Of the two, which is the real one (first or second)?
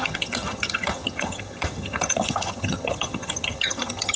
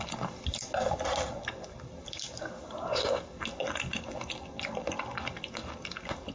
second